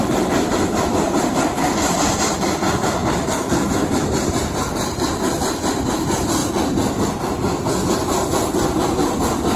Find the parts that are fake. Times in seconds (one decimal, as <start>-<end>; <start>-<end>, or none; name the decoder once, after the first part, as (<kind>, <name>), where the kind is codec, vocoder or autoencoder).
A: 0.0-3.0 (vocoder, BigVGAN v2); 4.0-6.4